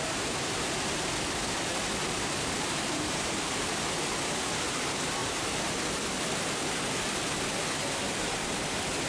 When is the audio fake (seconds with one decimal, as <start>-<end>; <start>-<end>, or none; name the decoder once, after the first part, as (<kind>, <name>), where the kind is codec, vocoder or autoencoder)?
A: 2.0-4.1 (vocoder, BigVGAN v2); 5.2-6.1